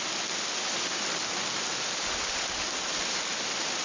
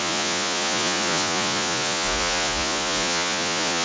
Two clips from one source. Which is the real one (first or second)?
first